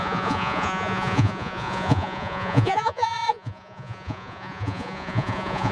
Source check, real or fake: fake